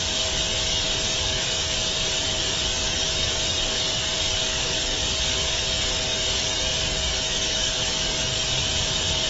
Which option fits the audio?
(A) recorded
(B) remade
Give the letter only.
B